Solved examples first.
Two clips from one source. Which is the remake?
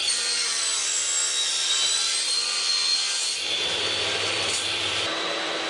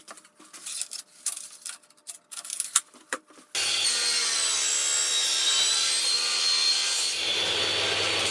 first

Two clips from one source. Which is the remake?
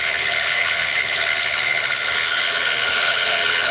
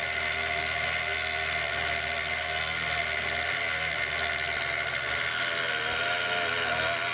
first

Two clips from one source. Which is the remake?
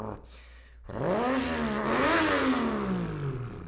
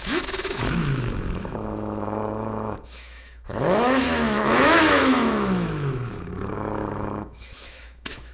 second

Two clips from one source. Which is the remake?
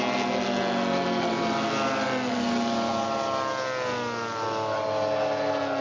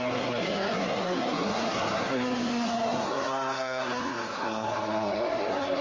second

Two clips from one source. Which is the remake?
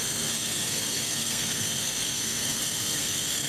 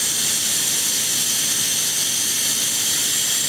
first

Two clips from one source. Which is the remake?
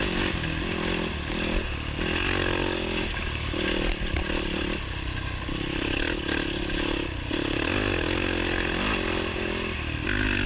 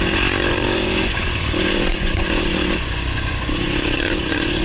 second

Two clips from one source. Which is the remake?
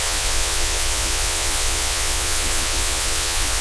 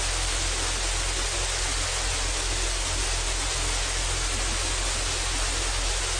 first